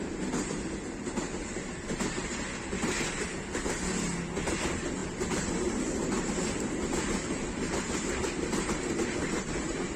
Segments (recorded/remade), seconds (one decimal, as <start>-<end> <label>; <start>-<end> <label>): 0.0-10.0 recorded